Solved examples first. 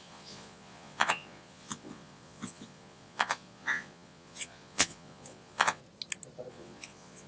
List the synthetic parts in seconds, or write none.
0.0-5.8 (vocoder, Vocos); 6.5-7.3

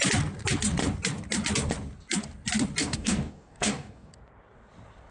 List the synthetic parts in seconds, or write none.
2.8-4.1 (codec, DAC)